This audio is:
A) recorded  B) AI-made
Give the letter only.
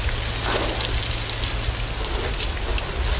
A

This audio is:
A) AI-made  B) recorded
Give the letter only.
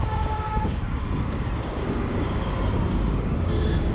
A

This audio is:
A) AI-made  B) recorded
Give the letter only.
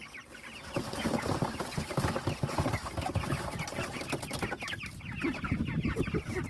B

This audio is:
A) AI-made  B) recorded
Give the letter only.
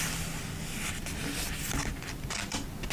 B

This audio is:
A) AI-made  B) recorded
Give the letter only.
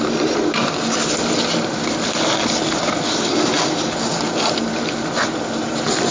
B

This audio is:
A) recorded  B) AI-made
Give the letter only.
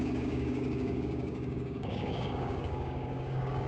B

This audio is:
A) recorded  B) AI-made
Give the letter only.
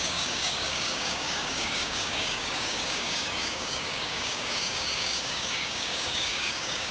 B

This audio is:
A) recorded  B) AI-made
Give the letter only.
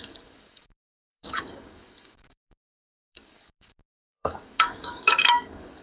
B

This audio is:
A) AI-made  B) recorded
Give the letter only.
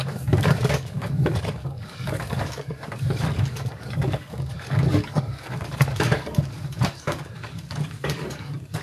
A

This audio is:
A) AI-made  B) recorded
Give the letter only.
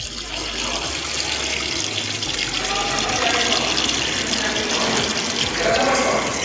B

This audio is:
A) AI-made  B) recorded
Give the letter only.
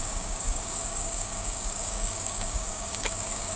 A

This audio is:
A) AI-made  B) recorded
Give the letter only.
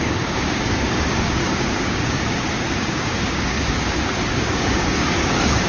A